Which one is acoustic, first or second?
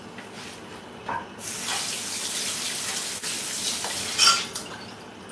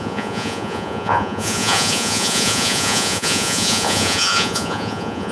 first